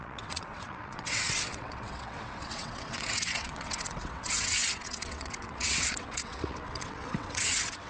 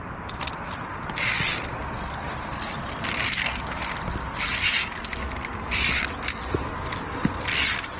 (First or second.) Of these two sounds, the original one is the second